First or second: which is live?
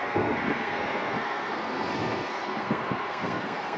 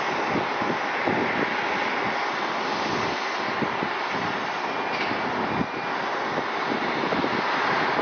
second